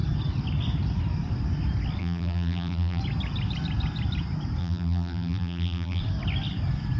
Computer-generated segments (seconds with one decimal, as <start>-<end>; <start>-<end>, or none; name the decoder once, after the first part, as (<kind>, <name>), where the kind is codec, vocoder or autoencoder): 2.0-3.0 (vocoder, BigVGAN v2); 4.6-6.0